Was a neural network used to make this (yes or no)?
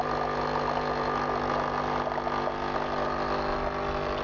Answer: no